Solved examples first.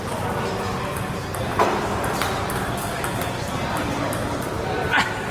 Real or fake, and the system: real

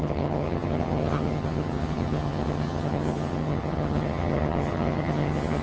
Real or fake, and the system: fake, vocoder, HiFi-GAN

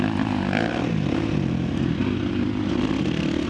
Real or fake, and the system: real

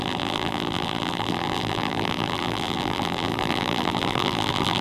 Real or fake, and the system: fake, vocoder, BigVGAN v2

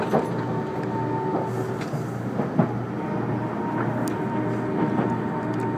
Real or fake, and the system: real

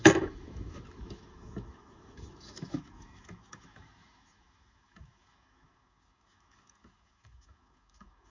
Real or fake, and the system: fake, autoencoder, DAC-VAE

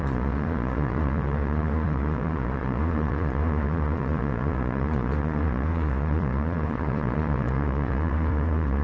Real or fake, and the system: fake, vocoder, Vocos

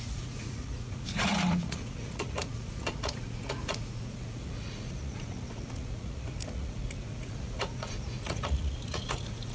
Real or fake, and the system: fake, vocoder, Vocos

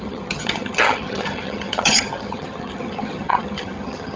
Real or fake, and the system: fake, vocoder, HiFi-GAN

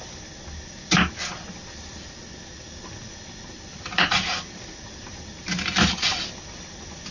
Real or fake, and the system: real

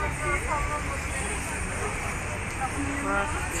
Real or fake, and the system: real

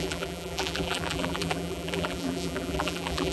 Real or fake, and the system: fake, vocoder, BigVGAN v2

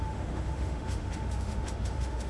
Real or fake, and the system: fake, autoencoder, DAC-VAE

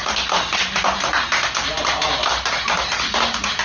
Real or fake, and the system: real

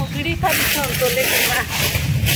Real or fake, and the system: real